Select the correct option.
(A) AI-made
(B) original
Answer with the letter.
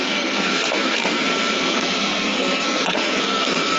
A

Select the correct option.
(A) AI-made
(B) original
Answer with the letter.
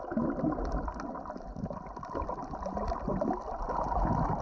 B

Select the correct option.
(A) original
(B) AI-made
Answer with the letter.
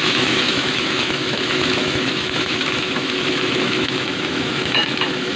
B